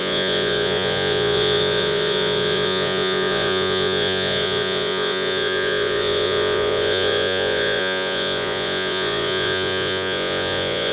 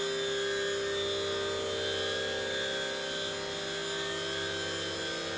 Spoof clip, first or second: first